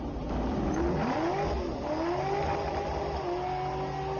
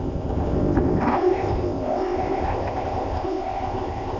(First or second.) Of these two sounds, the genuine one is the first